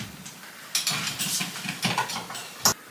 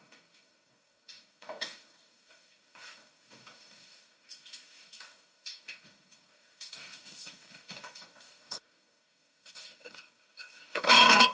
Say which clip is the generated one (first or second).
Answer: second